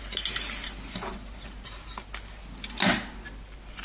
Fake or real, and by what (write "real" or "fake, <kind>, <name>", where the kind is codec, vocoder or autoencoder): real